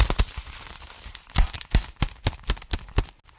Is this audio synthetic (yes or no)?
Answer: no